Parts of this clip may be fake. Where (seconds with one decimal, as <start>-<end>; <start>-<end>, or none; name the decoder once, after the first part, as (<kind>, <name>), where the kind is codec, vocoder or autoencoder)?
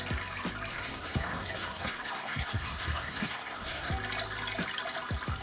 0.7-3.9 (codec, SNAC)